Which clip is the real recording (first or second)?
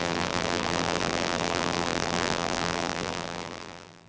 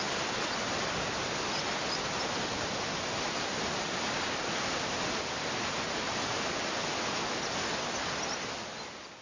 second